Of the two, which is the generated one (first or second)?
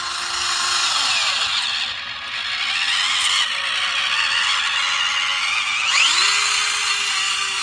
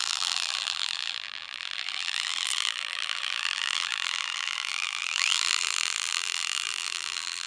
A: second